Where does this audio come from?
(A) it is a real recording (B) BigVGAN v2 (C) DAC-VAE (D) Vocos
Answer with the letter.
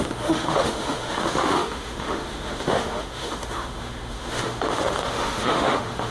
C